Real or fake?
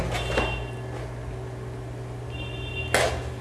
real